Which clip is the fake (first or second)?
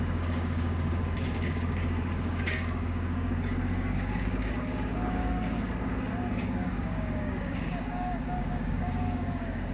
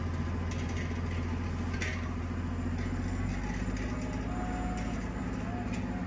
first